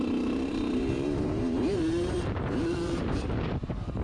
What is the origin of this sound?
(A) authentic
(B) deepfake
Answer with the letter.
B